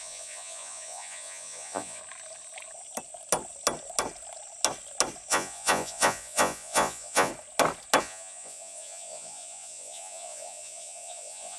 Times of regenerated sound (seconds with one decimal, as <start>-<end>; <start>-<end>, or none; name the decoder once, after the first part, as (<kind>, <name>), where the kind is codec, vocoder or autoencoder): 0.0-2.0 (vocoder, Vocos); 5.3-7.3; 8.0-11.6